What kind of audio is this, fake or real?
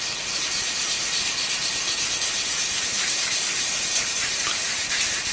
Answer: fake